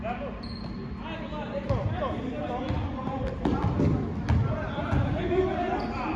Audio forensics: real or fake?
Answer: real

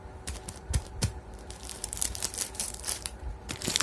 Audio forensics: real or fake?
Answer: fake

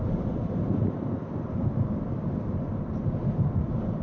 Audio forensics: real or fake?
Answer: fake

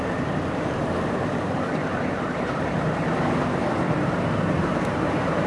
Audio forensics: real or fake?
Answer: fake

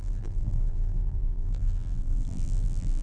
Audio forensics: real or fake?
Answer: fake